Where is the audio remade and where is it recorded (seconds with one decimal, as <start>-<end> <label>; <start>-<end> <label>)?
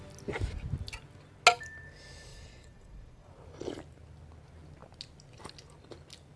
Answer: 0.0-2.3 recorded; 2.3-3.3 remade; 3.3-6.4 recorded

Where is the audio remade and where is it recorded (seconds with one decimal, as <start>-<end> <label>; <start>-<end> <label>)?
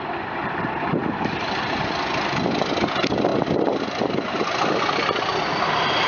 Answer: 0.0-6.1 recorded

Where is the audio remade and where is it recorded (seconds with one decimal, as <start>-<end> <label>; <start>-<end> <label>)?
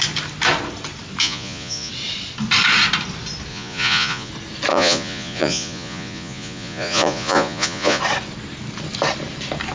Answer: 0.0-1.2 recorded; 1.2-1.9 remade; 1.9-3.5 recorded; 3.5-4.3 remade; 4.3-4.7 recorded; 4.7-8.0 remade; 8.0-9.7 recorded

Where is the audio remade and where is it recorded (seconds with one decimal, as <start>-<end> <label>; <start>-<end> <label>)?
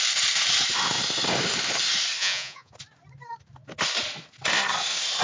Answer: 0.0-2.2 recorded; 2.2-2.7 remade; 2.7-5.2 recorded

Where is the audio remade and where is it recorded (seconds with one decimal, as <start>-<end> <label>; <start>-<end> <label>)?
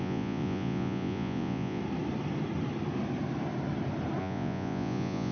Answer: 0.0-1.8 remade; 1.8-4.2 recorded; 4.2-5.3 remade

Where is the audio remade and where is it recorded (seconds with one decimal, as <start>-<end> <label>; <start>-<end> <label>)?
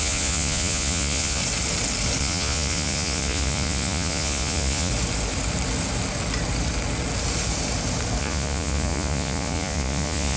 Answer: 0.0-1.4 remade; 1.4-2.2 recorded; 2.2-4.9 remade; 4.9-8.2 recorded; 8.2-10.4 remade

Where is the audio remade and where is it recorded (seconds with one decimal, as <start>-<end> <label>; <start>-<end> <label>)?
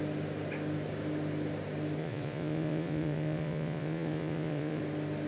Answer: 0.0-2.0 recorded; 2.0-4.8 remade; 4.8-5.3 recorded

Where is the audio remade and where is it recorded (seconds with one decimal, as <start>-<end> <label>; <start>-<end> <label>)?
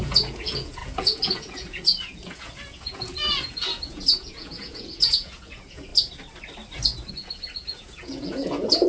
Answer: 0.0-5.9 remade; 5.9-7.1 recorded; 7.1-8.9 remade